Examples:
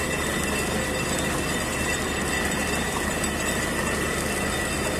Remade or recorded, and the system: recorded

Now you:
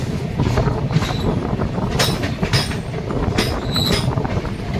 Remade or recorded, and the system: recorded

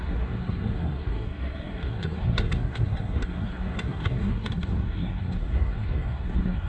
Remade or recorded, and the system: remade, codec, SNAC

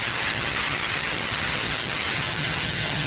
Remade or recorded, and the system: remade, vocoder, HiFi-GAN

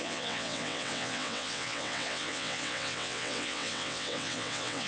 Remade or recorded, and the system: remade, vocoder, WaveNeXt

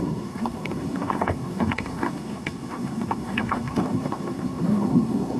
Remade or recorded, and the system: remade, codec, SNAC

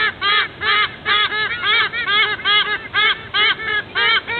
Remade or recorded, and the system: recorded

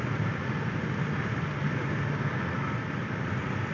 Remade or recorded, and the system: recorded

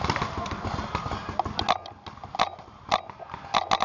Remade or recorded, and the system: recorded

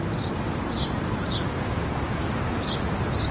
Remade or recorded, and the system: remade, vocoder, BigVGAN v2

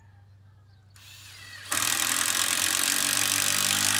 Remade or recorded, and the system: recorded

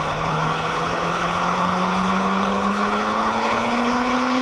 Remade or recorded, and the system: remade, codec, HILCodec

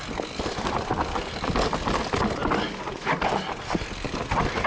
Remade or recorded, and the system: recorded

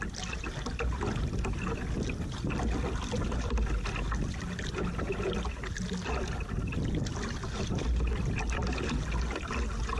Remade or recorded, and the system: recorded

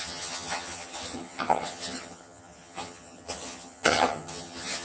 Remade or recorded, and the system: remade, vocoder, HiFi-GAN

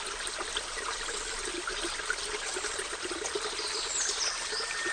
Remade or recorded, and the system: recorded